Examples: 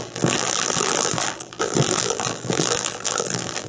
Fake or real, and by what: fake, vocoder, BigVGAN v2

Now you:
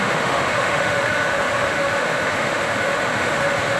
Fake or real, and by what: fake, autoencoder, DAC-VAE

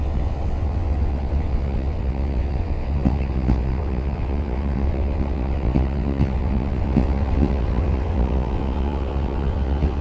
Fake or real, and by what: fake, vocoder, WaveNeXt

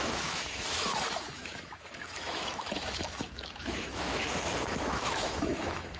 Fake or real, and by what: fake, autoencoder, DAC-VAE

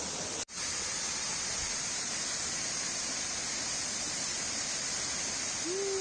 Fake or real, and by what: real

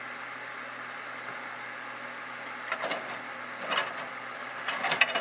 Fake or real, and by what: real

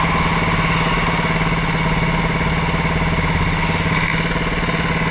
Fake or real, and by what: real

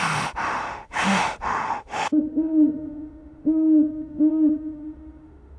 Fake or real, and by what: fake, autoencoder, DAC-VAE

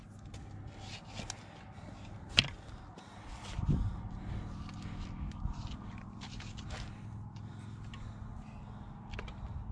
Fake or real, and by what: real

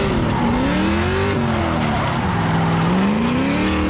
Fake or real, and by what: real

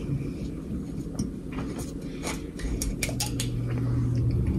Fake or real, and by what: real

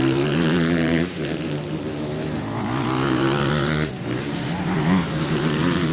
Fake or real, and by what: fake, vocoder, BigVGAN v2